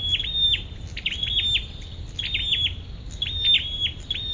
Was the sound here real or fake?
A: real